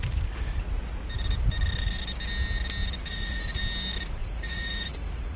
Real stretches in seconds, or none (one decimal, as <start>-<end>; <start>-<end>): 0.0-3.1; 3.6-4.2